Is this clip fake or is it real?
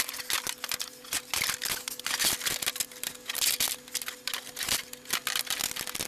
real